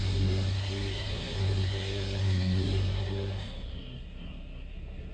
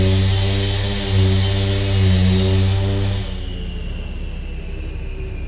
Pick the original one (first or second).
second